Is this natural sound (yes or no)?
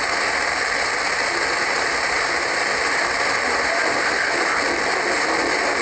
yes